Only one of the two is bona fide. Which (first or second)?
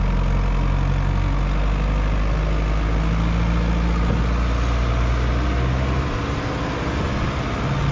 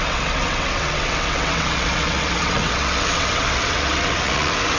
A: first